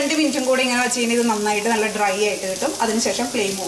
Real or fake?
real